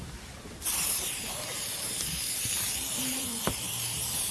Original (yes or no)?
no